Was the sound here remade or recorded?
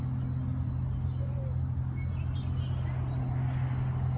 recorded